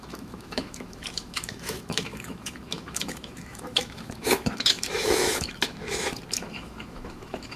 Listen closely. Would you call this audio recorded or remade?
remade